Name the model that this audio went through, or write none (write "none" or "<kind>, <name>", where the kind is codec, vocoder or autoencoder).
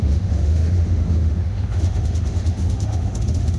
autoencoder, DAC-VAE